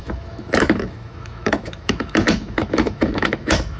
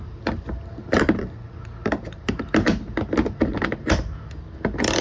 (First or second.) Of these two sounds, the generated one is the first